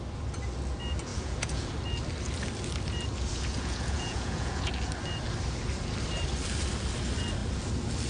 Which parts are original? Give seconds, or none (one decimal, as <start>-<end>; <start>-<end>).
0.0-1.1; 1.7-3.3; 4.7-8.1